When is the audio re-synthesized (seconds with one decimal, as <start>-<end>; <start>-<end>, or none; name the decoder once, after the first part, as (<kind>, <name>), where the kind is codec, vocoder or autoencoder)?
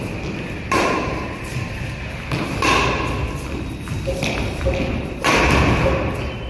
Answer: none